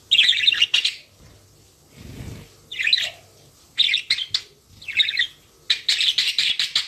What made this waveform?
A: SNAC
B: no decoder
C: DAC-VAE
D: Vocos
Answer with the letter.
B